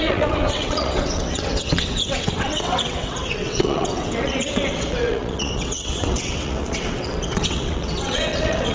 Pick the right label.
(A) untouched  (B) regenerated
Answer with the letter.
B